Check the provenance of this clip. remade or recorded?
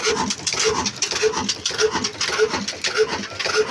recorded